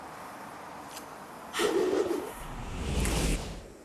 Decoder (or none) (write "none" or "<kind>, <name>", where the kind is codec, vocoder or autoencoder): vocoder, BigVGAN v2